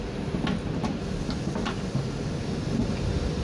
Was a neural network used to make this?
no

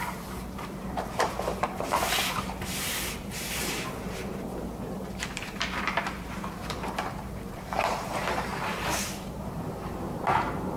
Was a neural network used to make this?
yes